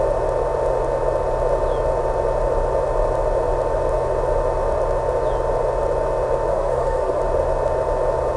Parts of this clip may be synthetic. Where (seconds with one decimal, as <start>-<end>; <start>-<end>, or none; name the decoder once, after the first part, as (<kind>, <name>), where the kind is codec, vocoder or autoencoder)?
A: 6.5-7.2 (codec, SNAC)